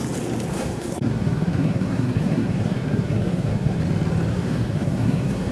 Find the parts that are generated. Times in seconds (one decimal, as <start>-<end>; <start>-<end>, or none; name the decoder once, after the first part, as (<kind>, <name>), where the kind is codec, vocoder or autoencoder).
0.5-3.8 (codec, SNAC); 4.3-5.5